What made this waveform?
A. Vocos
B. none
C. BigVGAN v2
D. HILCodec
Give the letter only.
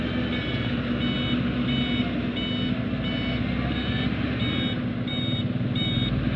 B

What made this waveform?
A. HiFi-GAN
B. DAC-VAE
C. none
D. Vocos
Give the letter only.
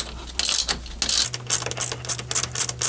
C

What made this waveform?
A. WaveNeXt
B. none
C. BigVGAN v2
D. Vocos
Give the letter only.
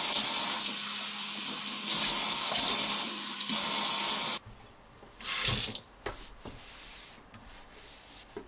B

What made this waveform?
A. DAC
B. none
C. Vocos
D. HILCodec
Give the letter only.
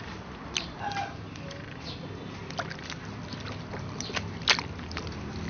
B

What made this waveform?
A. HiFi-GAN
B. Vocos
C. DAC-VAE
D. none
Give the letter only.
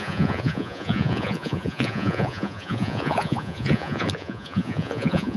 B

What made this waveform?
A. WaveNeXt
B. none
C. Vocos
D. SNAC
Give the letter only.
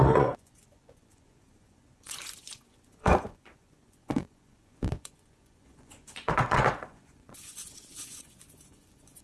C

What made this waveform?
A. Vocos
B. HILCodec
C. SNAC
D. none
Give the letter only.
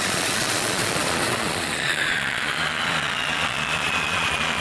A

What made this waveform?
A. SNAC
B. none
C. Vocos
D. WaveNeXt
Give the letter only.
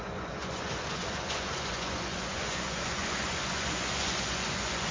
C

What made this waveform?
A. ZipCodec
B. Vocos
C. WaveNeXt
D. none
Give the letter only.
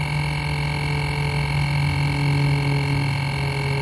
D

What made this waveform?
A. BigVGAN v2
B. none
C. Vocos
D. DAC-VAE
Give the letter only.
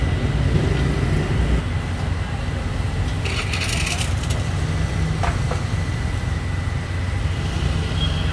B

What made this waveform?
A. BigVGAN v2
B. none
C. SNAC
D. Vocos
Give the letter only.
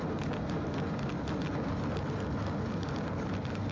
B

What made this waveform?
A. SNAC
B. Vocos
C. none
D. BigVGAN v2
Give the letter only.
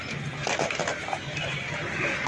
C